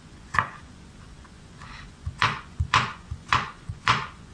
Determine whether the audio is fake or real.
fake